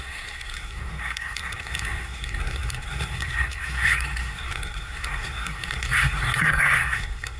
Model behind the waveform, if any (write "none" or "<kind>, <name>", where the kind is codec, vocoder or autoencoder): codec, SNAC